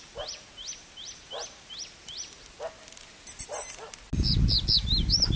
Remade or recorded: recorded